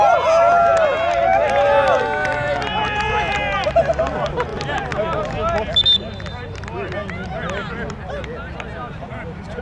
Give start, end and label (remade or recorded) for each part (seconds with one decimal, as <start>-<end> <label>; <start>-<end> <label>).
0.0-9.6 recorded